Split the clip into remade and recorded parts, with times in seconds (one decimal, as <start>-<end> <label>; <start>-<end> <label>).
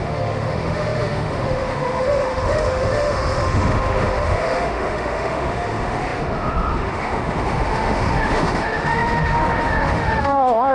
0.0-10.7 remade